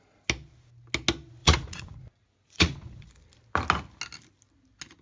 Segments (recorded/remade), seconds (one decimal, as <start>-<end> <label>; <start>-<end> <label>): 0.0-1.4 recorded; 1.4-3.1 remade; 3.1-5.0 recorded